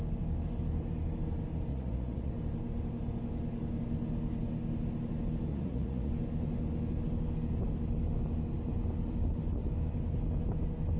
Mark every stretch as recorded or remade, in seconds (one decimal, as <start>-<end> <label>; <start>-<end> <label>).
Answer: 0.0-1.7 recorded; 1.7-2.3 remade; 2.3-5.5 recorded; 5.5-6.1 remade; 6.1-11.0 recorded

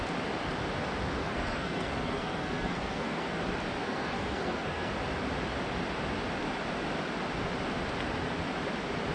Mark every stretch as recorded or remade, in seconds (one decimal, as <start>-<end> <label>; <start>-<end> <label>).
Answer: 0.0-1.2 recorded; 1.2-3.4 remade; 3.4-3.8 recorded; 3.8-4.9 remade; 4.9-9.1 recorded

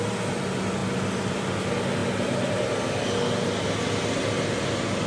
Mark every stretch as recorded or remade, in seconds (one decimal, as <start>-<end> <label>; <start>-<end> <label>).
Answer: 0.0-5.1 recorded

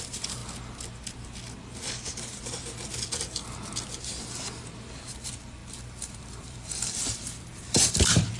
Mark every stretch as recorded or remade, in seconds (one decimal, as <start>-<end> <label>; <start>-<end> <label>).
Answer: 0.0-0.4 remade; 0.4-5.1 recorded; 5.1-8.4 remade

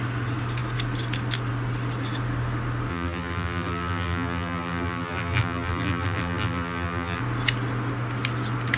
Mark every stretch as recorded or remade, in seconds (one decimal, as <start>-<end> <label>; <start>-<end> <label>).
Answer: 0.0-2.9 recorded; 2.9-7.2 remade; 7.2-8.8 recorded